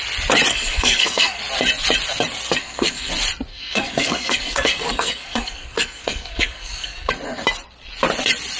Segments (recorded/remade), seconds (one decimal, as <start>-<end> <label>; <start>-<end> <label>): 0.0-0.5 recorded; 0.5-1.4 remade; 1.4-2.6 recorded; 2.6-3.1 remade; 3.1-3.5 recorded; 3.5-7.1 remade; 7.1-8.6 recorded